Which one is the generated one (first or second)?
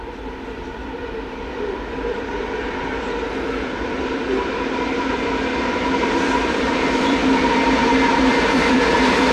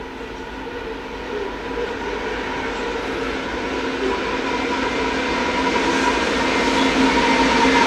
first